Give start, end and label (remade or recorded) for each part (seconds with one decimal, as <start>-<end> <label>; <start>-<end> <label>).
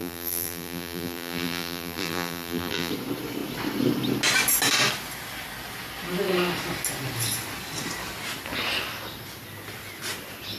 0.0-2.9 remade; 2.9-10.6 recorded